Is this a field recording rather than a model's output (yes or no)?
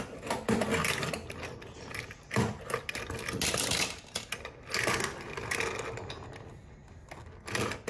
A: yes